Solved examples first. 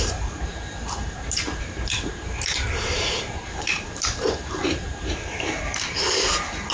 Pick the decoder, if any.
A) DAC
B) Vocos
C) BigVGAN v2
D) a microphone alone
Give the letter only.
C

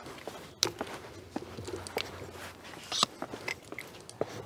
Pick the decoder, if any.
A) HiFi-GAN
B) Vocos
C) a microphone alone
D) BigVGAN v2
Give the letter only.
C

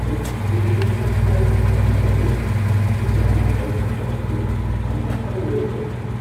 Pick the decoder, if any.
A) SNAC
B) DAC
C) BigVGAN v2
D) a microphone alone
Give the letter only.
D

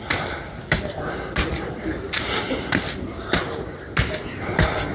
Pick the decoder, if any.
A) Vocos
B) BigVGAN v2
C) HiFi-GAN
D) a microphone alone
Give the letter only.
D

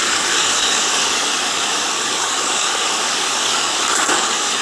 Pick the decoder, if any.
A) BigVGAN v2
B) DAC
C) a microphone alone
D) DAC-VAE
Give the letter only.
B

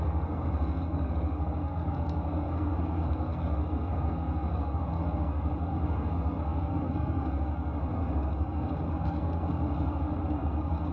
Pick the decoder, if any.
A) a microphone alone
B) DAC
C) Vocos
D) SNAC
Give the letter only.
D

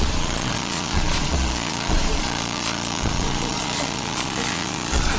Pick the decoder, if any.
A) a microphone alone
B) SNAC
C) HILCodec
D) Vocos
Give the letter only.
D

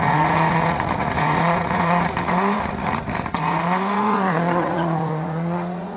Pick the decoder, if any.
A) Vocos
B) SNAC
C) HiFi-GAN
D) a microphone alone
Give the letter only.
A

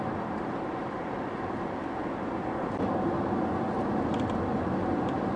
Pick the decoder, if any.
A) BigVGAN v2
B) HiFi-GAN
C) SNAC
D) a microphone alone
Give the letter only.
D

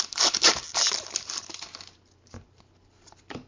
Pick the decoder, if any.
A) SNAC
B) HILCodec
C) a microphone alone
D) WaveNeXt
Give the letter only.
C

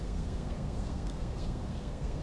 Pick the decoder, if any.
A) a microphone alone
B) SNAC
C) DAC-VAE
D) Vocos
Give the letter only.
B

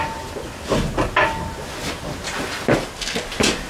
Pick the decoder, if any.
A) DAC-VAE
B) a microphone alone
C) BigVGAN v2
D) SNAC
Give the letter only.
B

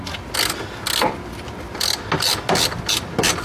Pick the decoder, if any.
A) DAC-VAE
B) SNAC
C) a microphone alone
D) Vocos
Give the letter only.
C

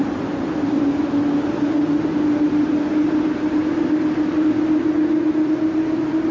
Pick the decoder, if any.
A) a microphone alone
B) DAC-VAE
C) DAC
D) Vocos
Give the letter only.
A